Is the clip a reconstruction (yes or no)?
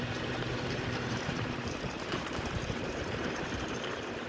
yes